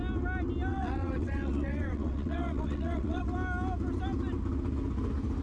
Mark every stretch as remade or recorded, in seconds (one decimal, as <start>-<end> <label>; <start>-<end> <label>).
0.0-0.7 recorded; 0.7-3.2 remade; 3.2-5.4 recorded